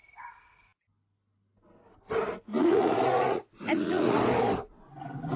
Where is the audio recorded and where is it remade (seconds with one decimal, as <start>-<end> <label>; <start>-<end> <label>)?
0.0-2.5 recorded; 2.5-4.2 remade; 4.2-5.4 recorded